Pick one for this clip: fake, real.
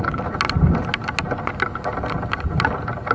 real